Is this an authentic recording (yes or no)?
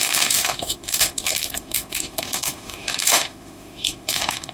no